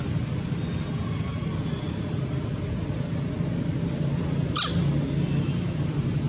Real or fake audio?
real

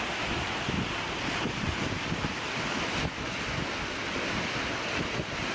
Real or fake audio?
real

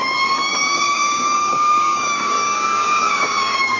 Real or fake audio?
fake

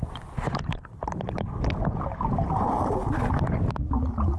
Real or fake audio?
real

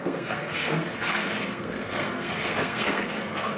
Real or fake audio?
fake